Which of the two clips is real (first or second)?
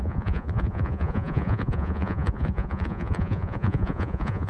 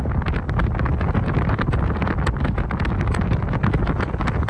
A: second